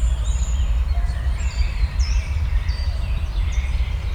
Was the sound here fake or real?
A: fake